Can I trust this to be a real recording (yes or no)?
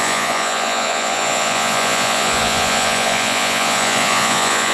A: no